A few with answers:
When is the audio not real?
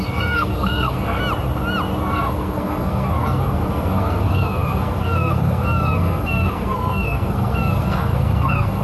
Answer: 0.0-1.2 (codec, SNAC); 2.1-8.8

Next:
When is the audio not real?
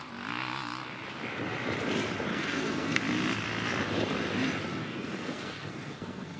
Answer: 2.3-3.0 (codec, SNAC); 4.8-6.4